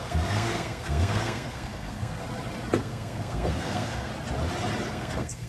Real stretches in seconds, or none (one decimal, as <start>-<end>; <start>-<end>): 2.2-2.8; 4.1-4.9